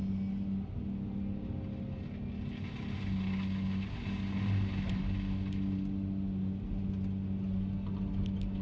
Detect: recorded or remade recorded